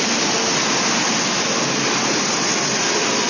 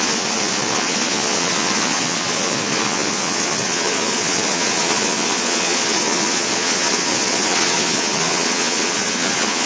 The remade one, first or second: second